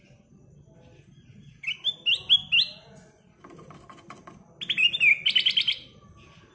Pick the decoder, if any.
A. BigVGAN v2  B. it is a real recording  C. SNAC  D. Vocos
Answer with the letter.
B